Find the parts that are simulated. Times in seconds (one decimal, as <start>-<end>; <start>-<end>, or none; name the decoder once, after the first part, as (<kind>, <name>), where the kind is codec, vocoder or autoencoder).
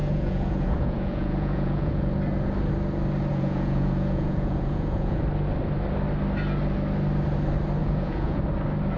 0.0-2.1 (vocoder, Vocos); 3.3-5.2; 7.8-8.4